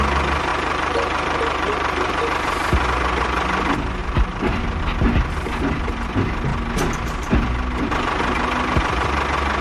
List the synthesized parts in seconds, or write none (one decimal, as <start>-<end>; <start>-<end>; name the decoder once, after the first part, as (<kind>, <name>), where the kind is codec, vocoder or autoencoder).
0.5-2.2 (vocoder, BigVGAN v2); 4.0-4.8